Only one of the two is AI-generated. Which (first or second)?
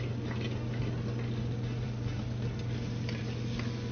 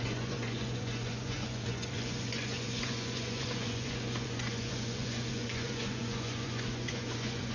second